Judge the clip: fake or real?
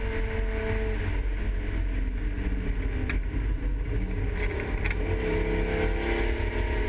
real